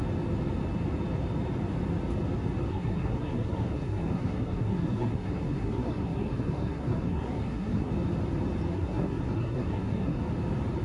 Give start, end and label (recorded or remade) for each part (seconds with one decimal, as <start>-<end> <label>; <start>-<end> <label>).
0.0-2.7 recorded; 2.7-7.9 remade; 7.9-8.7 recorded; 8.7-10.2 remade; 10.2-10.8 recorded